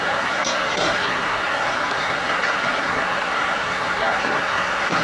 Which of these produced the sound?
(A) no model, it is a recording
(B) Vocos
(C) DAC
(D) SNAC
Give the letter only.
D